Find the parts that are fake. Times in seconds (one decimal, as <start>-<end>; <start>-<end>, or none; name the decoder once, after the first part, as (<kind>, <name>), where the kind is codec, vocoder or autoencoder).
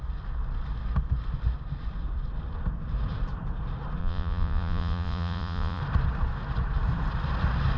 4.0-5.8 (vocoder, Vocos)